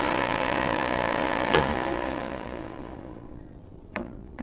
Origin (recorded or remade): remade